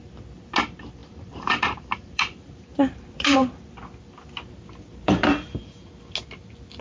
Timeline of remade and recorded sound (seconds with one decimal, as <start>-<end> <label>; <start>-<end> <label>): 0.0-1.0 recorded; 1.0-3.7 remade; 3.7-4.9 recorded; 4.9-5.9 remade; 5.9-6.8 recorded